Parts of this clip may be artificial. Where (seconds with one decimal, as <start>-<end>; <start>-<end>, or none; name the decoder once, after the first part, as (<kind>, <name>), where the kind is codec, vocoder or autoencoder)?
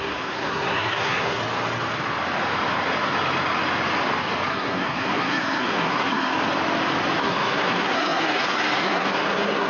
0.0-1.4 (codec, SNAC); 4.5-6.3; 7.2-9.7